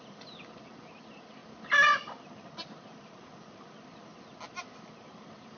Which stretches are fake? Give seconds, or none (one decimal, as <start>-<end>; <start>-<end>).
none